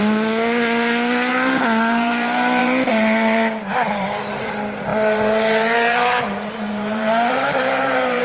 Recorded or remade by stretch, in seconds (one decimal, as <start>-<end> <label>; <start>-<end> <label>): 0.0-1.3 recorded; 1.3-8.2 remade